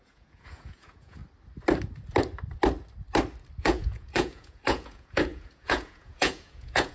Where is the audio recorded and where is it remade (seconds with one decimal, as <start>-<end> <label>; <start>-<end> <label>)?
0.0-1.2 remade; 1.2-3.6 recorded; 3.6-6.9 remade